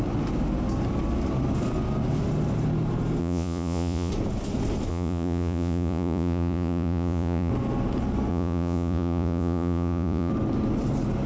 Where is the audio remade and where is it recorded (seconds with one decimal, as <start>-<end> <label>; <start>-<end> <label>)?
0.0-3.2 recorded; 3.2-4.1 remade; 4.1-4.9 recorded; 4.9-7.5 remade; 7.5-8.3 recorded; 8.3-10.3 remade; 10.3-11.3 recorded

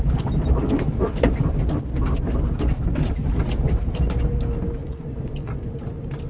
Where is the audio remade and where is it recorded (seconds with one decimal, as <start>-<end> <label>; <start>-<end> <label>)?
0.0-4.8 recorded; 4.8-5.5 remade; 5.5-6.3 recorded

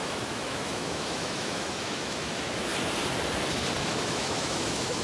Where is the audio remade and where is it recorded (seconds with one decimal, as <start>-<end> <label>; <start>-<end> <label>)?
0.0-2.7 remade; 2.7-3.8 recorded; 3.8-5.0 remade

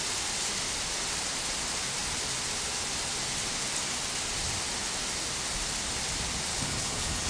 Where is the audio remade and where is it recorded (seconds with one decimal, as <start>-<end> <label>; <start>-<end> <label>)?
0.0-6.5 recorded; 6.5-7.3 remade

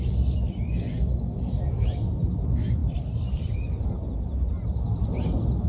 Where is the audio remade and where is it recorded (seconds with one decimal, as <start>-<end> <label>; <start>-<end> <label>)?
0.0-2.8 recorded; 2.8-3.9 remade; 3.9-5.7 recorded